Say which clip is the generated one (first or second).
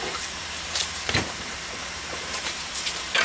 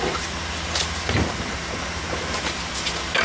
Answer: first